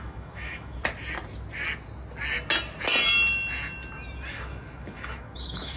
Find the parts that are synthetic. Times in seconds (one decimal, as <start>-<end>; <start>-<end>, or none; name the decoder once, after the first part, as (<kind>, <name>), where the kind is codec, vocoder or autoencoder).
0.0-0.8 (autoencoder, DAC-VAE); 4.3-5.8